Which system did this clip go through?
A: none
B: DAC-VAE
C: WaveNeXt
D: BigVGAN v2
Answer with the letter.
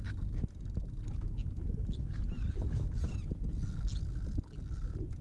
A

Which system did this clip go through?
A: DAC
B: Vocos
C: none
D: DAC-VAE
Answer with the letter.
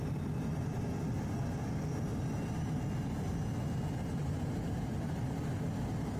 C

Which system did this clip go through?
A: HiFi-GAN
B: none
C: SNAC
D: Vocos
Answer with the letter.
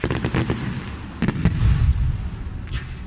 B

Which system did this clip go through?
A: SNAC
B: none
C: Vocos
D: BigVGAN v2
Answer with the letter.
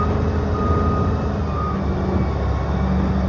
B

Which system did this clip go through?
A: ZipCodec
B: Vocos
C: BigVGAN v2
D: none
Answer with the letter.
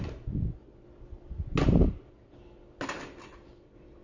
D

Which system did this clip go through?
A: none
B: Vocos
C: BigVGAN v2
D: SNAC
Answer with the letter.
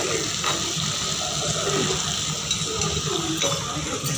A